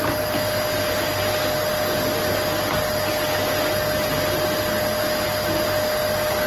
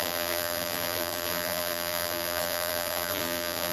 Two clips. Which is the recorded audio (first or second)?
first